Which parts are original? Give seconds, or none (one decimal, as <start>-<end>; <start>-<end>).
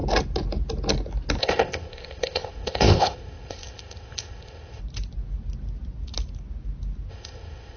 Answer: 0.0-1.4; 4.8-7.1